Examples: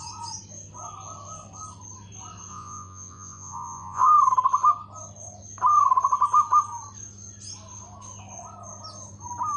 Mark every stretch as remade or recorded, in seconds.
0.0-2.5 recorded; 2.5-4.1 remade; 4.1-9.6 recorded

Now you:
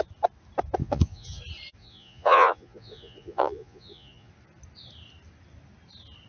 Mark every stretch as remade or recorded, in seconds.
0.0-0.8 recorded; 0.8-1.4 remade; 1.4-1.8 recorded; 1.8-4.3 remade; 4.3-6.3 recorded

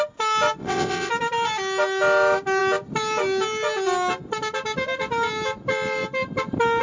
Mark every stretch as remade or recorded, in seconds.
0.0-0.6 recorded; 0.6-1.1 remade; 1.1-6.8 recorded

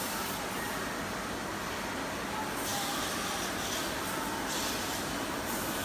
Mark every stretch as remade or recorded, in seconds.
0.0-5.8 recorded

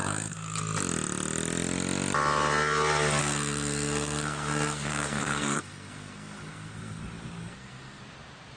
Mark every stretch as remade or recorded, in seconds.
0.0-0.6 remade; 0.6-3.2 recorded; 3.2-7.0 remade; 7.0-7.4 recorded; 7.4-8.0 remade; 8.0-8.6 recorded

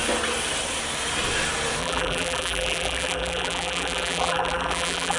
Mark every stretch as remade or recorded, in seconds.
0.0-1.8 recorded; 1.8-5.2 remade